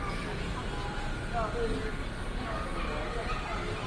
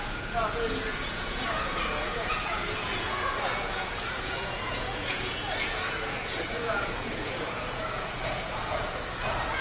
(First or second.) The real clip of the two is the first